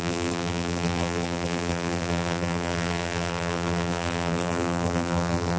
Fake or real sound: fake